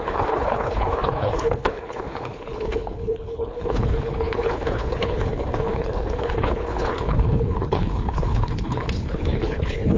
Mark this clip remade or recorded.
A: remade